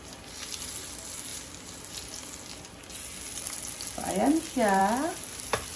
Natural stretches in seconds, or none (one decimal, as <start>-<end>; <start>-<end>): 0.0-5.8